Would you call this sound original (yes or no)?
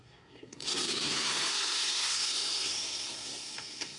no